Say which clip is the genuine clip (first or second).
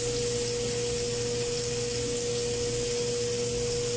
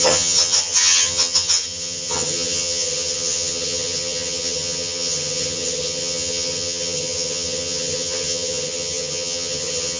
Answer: first